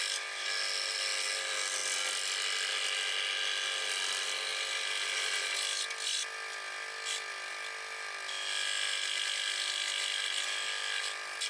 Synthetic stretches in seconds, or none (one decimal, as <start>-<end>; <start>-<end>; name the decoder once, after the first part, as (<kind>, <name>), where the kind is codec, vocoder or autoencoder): none